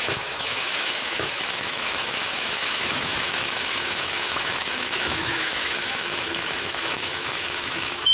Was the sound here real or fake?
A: fake